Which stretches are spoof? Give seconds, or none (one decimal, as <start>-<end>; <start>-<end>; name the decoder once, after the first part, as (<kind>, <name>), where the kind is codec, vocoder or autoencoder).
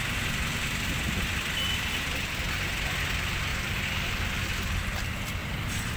5.4-6.0 (vocoder, BigVGAN v2)